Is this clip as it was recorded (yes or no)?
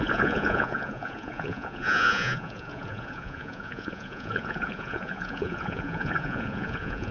no